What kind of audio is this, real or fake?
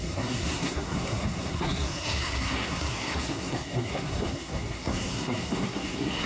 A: fake